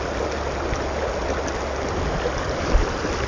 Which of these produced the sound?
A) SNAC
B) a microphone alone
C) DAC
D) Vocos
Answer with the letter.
B